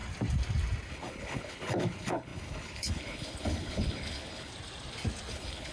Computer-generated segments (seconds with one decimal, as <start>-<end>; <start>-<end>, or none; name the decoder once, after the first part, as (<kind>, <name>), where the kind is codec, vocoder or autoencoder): 0.9-4.5 (codec, HILCodec); 5.3-5.7